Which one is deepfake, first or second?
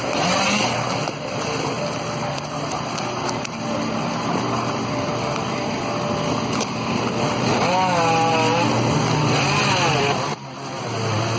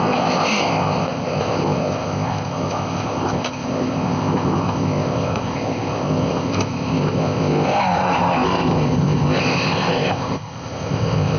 second